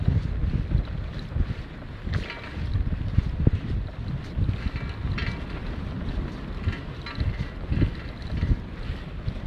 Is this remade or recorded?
recorded